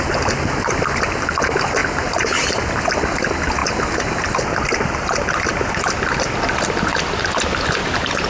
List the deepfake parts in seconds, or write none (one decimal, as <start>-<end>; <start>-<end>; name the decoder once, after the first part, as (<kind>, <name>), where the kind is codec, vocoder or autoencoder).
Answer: none